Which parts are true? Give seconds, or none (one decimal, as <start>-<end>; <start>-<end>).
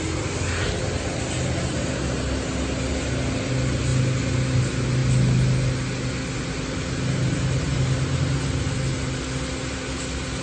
0.0-10.4